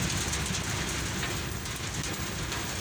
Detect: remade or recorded recorded